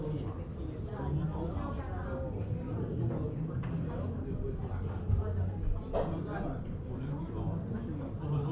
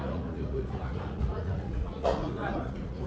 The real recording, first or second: first